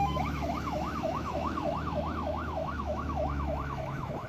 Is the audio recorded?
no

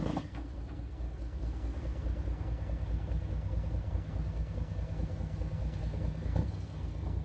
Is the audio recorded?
no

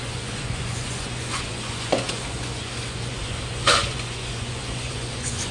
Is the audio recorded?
no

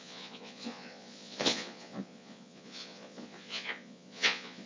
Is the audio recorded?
no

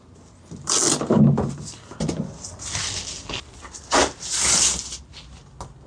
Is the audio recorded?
yes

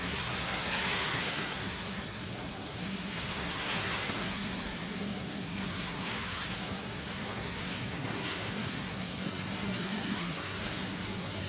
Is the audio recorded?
no